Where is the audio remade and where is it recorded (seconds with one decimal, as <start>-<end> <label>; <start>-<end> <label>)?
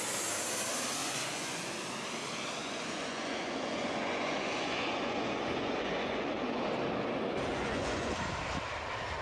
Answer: 0.0-1.0 recorded; 1.0-1.7 remade; 1.7-2.6 recorded; 2.6-6.6 remade; 6.6-7.5 recorded; 7.5-8.1 remade; 8.1-9.2 recorded